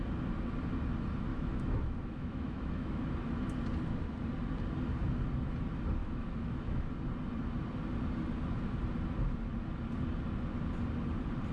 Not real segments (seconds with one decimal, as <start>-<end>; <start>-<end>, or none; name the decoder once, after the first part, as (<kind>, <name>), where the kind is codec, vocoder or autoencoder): 1.3-3.0 (autoencoder, DAC-VAE); 6.0-6.9